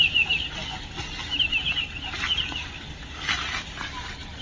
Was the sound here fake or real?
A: real